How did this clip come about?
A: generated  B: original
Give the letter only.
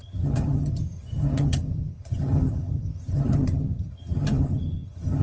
A